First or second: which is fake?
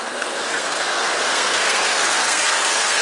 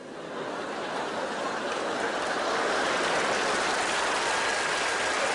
first